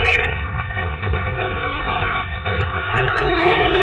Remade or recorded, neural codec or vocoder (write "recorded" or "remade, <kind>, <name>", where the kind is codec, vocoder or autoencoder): remade, codec, SNAC